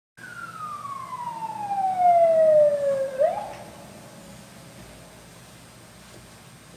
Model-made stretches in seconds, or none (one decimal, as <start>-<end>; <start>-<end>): none